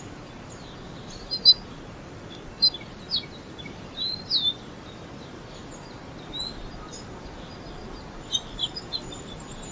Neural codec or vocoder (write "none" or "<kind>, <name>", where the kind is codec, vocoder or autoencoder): none